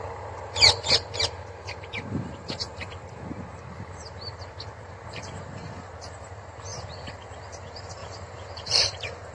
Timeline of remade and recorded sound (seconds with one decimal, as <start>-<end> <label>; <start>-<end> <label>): 0.0-2.6 remade; 2.6-3.7 recorded; 3.7-6.7 remade; 6.7-7.6 recorded; 7.6-9.3 remade